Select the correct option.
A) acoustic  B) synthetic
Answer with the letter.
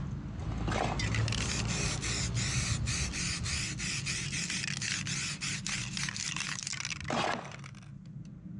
A